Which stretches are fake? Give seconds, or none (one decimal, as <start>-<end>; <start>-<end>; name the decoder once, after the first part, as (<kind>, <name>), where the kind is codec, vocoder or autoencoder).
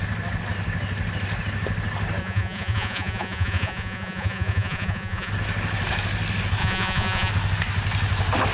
2.2-5.3 (vocoder, Vocos); 6.6-7.3